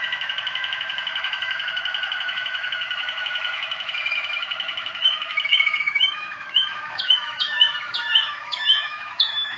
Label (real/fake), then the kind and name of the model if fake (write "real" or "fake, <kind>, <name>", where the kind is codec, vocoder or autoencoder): fake, autoencoder, DAC-VAE